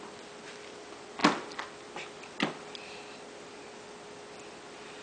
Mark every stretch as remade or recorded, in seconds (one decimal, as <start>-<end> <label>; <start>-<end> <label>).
0.0-5.0 recorded